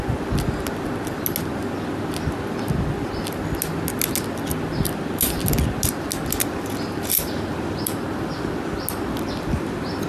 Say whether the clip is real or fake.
real